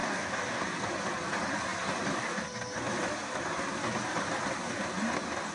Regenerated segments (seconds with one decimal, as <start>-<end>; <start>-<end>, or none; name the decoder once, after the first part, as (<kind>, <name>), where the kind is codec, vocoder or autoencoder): 0.0-0.6 (codec, DAC)